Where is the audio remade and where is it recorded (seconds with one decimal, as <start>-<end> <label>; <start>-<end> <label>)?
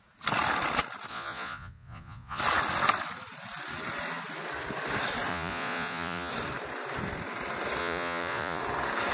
0.0-1.1 recorded; 1.1-2.4 remade; 2.4-5.3 recorded; 5.3-6.3 remade; 6.3-7.8 recorded; 7.8-8.6 remade; 8.6-9.1 recorded